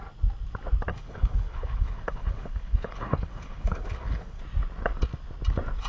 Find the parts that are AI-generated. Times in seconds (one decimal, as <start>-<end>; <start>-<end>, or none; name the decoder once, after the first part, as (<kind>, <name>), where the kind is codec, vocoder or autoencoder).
0.9-4.4 (codec, HILCodec)

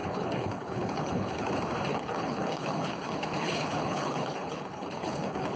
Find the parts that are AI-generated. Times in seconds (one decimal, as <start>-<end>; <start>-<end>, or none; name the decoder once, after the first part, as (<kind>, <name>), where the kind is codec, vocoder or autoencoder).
0.0-1.5 (codec, HILCodec); 1.9-5.6